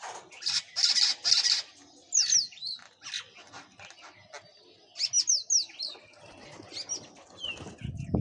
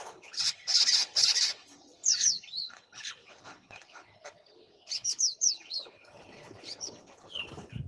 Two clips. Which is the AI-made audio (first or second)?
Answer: second